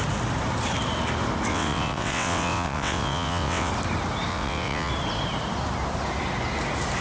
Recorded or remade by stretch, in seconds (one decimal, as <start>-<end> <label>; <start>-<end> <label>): 0.0-1.5 recorded; 1.5-3.7 remade; 3.7-4.3 recorded; 4.3-4.9 remade; 4.9-7.0 recorded

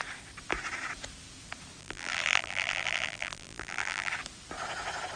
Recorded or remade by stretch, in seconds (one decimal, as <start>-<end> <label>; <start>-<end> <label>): 0.0-1.8 recorded; 1.8-4.1 remade; 4.1-5.2 recorded

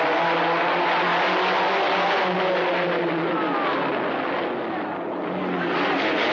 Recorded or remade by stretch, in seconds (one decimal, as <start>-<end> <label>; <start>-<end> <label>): 0.0-6.3 recorded